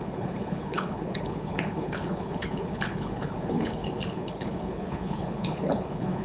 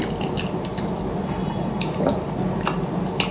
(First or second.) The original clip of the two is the second